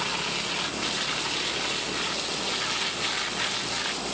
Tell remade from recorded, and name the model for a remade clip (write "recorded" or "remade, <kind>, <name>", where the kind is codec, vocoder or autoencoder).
recorded